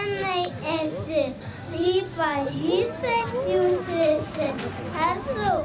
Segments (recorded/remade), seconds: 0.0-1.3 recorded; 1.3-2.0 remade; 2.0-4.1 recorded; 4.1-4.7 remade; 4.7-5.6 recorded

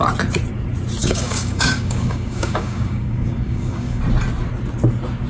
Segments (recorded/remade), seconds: 0.0-1.0 recorded; 1.0-4.0 remade; 4.0-5.3 recorded

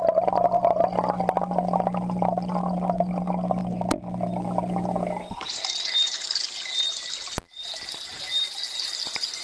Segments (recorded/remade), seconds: 0.0-9.4 recorded

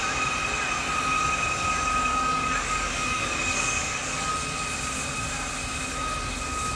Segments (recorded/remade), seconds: 0.0-2.1 recorded; 2.1-4.3 remade; 4.3-6.8 recorded

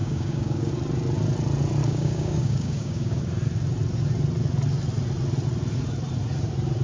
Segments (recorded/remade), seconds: 0.0-0.7 remade; 0.7-1.8 recorded; 1.8-3.2 remade; 3.2-6.8 recorded

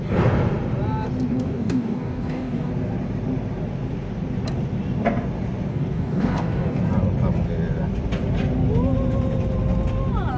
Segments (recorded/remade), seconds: 0.0-1.3 recorded; 1.3-2.7 remade; 2.7-5.7 recorded; 5.7-6.8 remade; 6.8-10.4 recorded

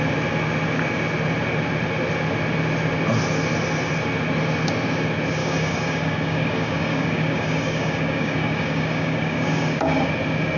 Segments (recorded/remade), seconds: 0.0-5.4 recorded; 5.4-10.1 remade; 10.1-10.6 recorded

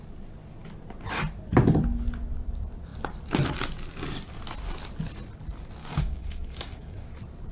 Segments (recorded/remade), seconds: 0.0-5.8 recorded; 5.8-7.1 remade; 7.1-7.5 recorded